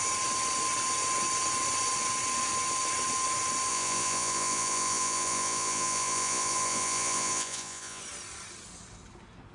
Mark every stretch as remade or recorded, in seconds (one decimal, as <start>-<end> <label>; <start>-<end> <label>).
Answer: 0.0-3.7 recorded; 3.7-8.0 remade; 8.0-9.5 recorded